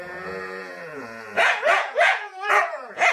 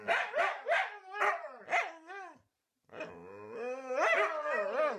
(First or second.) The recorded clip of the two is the second